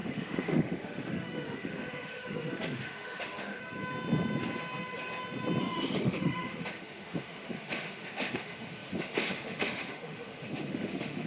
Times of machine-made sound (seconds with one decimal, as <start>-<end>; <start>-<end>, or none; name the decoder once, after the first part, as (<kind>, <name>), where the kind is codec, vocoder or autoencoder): 0.0-3.6 (autoencoder, DAC-VAE); 5.6-11.3